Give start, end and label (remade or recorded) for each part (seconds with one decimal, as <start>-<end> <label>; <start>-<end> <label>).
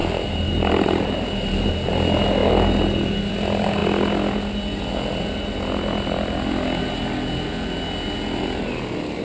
0.0-1.7 remade; 1.7-9.2 recorded